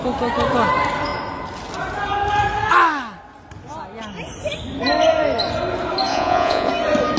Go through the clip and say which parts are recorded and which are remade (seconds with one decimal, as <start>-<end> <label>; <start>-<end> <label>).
0.0-6.1 recorded; 6.1-6.7 remade; 6.7-7.2 recorded